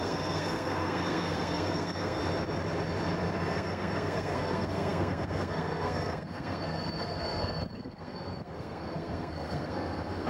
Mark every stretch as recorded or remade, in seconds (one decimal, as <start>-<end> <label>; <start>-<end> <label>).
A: 0.0-2.2 remade; 2.2-3.5 recorded; 3.5-10.3 remade